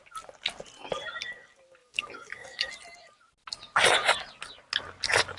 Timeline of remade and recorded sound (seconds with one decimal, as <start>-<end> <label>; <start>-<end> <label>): 0.0-1.8 recorded; 1.8-2.7 remade; 2.7-5.4 recorded